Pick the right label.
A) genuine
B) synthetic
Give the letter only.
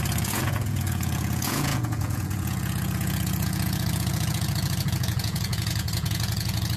B